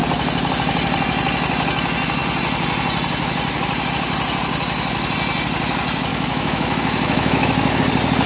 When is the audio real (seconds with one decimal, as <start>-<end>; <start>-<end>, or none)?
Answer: 0.0-6.1; 7.8-8.3